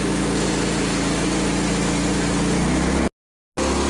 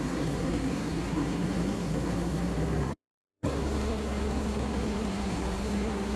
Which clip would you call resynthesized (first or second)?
second